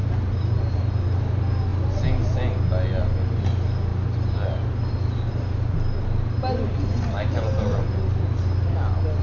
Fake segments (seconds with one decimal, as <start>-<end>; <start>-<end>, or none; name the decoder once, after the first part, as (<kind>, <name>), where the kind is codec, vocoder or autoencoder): none